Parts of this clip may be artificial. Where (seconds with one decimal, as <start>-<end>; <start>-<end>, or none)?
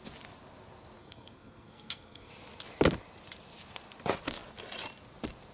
1.0-2.3